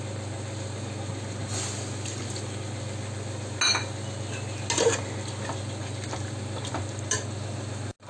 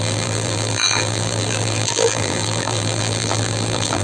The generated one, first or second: second